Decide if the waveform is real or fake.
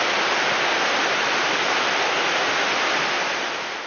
real